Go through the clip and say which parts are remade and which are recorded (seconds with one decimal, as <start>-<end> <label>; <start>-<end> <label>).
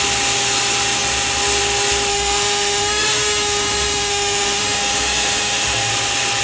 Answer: 0.0-2.1 recorded; 2.1-5.9 remade; 5.9-6.4 recorded